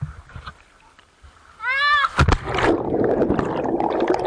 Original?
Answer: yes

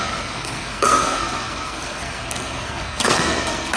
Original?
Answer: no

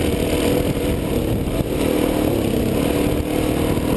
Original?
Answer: yes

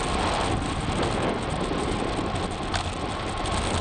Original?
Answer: yes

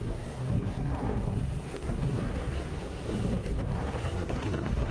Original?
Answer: no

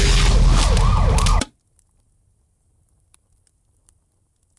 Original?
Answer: yes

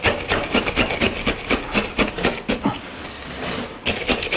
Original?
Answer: yes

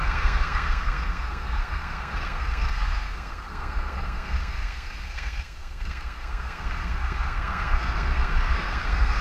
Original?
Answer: no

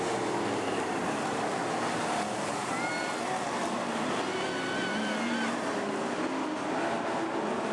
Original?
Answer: yes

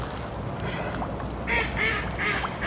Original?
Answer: yes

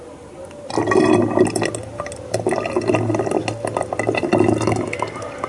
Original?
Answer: yes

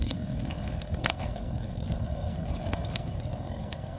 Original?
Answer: no